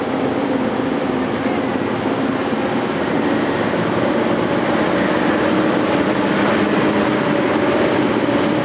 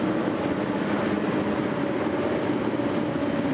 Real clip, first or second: first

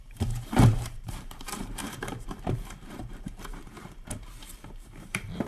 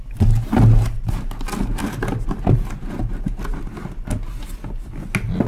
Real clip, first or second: second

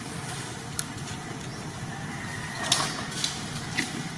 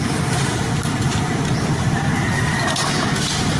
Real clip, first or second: first